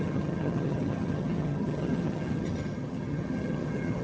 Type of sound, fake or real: fake